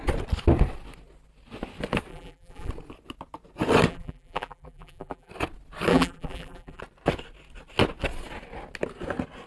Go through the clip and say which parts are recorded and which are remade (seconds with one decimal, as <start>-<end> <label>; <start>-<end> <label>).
0.0-2.1 recorded; 2.1-2.7 remade; 2.7-3.9 recorded; 3.9-5.3 remade; 5.3-5.9 recorded; 5.9-6.8 remade; 6.8-9.5 recorded